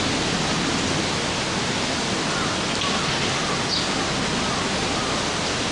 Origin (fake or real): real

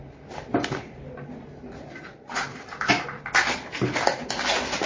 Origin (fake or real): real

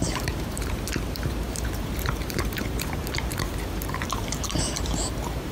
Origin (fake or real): fake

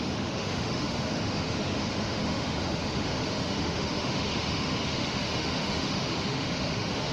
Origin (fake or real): fake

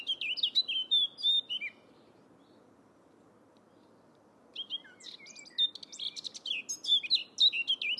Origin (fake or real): real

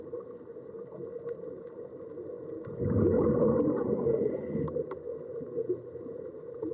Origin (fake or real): real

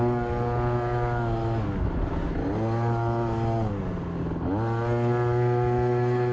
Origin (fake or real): real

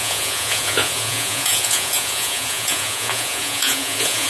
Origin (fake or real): fake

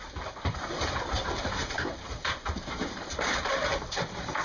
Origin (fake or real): fake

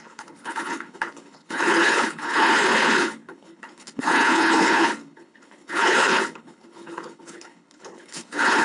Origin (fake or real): fake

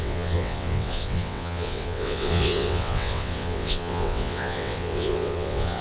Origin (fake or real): fake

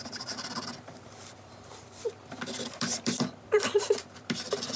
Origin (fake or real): fake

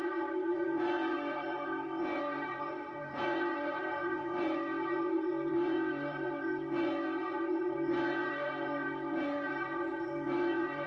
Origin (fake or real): fake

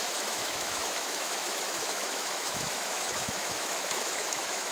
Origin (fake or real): fake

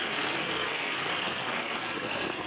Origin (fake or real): fake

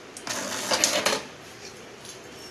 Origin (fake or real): real